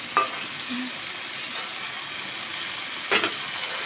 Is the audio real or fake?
real